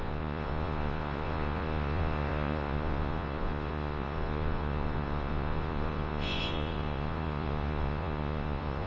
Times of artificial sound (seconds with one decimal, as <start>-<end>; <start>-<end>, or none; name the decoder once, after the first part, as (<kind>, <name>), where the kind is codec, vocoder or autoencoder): 0.0-8.9 (vocoder, Vocos)